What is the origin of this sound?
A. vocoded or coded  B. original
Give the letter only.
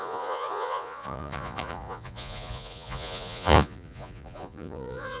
A